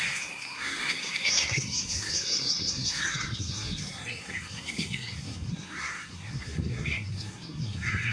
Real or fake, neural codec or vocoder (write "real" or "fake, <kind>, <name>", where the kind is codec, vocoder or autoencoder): fake, codec, SNAC